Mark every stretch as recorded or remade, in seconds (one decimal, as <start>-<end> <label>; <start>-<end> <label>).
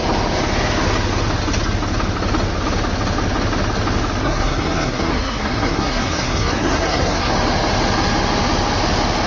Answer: 0.0-4.2 recorded; 4.2-7.3 remade; 7.3-9.3 recorded